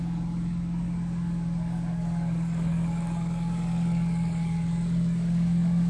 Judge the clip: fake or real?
fake